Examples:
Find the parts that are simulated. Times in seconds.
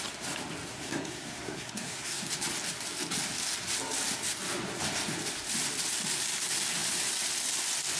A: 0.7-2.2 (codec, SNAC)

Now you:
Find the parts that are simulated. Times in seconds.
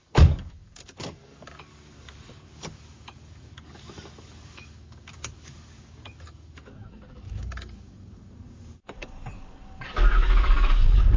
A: 0.0-11.2 (codec, DAC)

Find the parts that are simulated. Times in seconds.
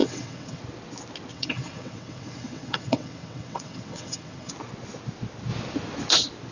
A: 0.0-0.6 (vocoder, WaveNeXt); 1.3-4.5